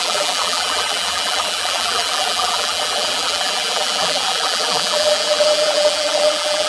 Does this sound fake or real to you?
fake